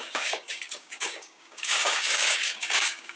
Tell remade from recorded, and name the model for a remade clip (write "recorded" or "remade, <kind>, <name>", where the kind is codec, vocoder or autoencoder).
remade, codec, DAC